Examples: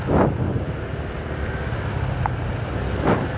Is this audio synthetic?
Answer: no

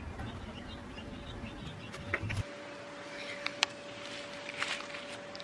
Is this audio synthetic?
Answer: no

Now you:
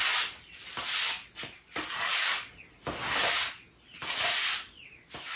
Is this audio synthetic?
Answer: no